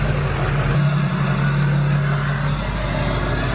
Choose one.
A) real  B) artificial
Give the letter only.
A